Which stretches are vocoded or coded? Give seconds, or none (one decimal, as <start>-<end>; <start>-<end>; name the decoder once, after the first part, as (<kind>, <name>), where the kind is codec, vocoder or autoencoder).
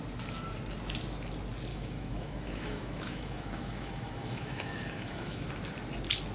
1.7-5.5 (autoencoder, DAC-VAE)